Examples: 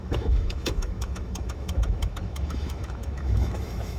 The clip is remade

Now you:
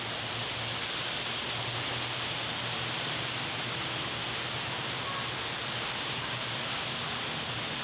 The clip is recorded